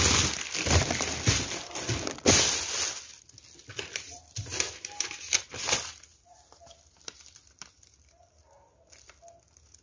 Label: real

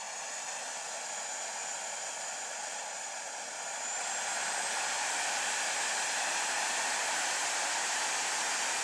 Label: fake